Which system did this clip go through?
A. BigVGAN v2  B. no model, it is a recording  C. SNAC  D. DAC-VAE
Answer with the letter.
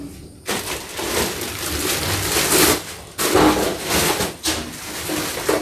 B